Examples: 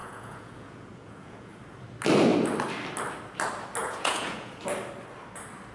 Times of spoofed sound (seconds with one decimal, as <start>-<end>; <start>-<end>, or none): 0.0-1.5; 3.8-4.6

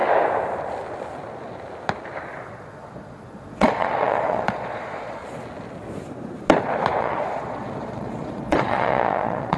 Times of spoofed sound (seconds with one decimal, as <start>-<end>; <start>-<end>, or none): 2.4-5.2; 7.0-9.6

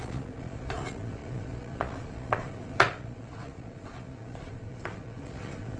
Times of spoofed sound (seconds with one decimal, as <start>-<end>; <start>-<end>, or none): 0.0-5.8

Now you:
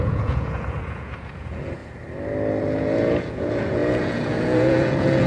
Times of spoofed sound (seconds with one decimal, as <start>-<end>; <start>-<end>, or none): 0.0-1.8; 2.6-5.3